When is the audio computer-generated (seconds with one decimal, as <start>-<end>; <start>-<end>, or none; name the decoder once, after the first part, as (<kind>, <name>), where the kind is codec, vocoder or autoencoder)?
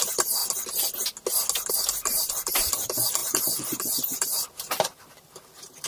0.0-0.4 (vocoder, BigVGAN v2); 1.7-5.9